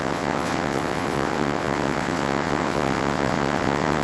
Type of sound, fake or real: fake